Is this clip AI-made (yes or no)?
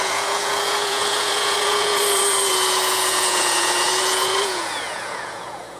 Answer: yes